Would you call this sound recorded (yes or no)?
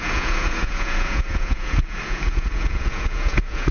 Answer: no